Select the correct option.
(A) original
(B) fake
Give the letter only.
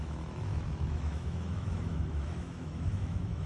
B